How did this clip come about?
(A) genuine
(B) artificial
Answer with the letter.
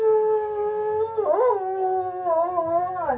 A